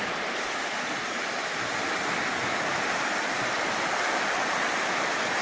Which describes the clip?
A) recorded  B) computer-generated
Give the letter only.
A